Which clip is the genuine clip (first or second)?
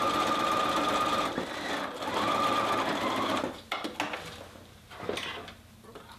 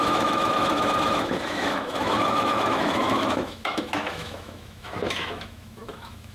first